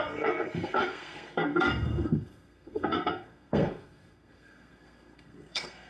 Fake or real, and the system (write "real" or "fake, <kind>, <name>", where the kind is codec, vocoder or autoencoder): fake, codec, SNAC